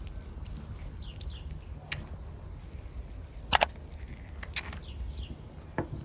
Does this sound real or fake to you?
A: real